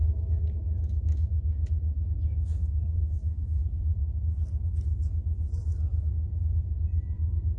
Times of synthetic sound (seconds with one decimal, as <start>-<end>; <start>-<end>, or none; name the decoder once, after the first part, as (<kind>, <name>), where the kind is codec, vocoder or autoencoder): 0.0-3.6 (autoencoder, DAC-VAE); 5.6-6.1